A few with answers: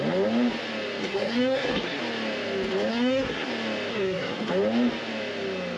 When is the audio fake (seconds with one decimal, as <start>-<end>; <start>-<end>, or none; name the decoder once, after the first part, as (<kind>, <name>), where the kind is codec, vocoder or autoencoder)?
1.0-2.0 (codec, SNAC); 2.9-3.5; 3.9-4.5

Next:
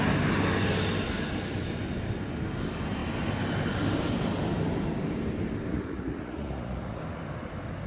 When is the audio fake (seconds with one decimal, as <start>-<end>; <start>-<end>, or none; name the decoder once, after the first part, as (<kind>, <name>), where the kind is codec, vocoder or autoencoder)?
5.7-7.0 (vocoder, Vocos)

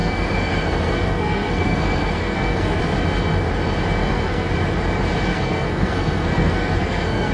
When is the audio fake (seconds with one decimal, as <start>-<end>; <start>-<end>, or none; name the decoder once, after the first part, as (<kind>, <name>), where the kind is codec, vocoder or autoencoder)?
0.0-2.8 (codec, SNAC); 4.0-4.5; 5.3-7.3

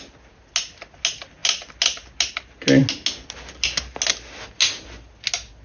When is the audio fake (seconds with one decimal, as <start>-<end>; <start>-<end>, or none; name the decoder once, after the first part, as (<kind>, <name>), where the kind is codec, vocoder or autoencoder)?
none

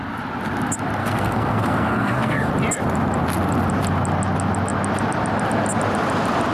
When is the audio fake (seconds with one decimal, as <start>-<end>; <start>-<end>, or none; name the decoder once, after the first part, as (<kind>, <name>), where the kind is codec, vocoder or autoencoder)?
1.0-2.5 (codec, SNAC)

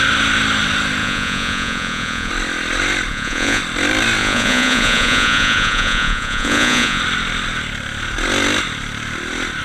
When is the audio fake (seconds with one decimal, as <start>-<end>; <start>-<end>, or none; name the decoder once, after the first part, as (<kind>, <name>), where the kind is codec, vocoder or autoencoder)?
1.0-2.3 (vocoder, Vocos); 3.1-3.6; 4.2-7.0